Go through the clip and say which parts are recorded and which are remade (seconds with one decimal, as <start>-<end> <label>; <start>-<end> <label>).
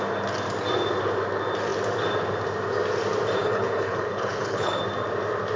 0.0-3.4 recorded; 3.4-4.8 remade; 4.8-5.6 recorded